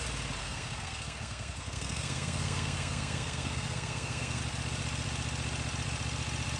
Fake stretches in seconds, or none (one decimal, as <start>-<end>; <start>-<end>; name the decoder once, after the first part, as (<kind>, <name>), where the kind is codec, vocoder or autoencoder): 0.4-4.4 (codec, SNAC)